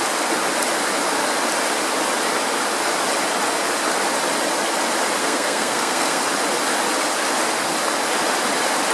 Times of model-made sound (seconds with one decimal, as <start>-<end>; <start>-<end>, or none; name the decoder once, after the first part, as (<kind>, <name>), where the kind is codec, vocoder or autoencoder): 5.2-6.2 (codec, SNAC)